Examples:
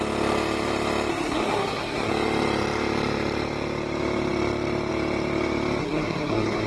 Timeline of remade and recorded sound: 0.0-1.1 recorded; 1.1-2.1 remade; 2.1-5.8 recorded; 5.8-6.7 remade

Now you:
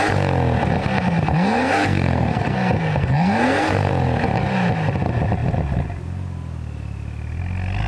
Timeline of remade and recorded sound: 0.0-0.8 recorded; 0.8-3.9 remade; 3.9-7.9 recorded